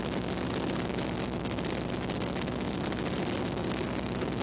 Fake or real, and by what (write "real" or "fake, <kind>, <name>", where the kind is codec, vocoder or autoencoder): real